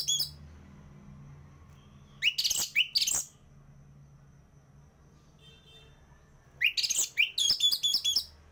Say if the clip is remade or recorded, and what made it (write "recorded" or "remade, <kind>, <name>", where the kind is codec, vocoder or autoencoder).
recorded